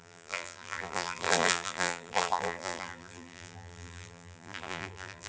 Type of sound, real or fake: fake